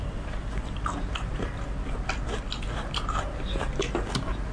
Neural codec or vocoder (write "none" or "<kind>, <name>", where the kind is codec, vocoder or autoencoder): none